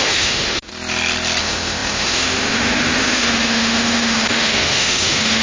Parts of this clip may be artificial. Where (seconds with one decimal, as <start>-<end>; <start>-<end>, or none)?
0.0-0.7; 1.4-5.4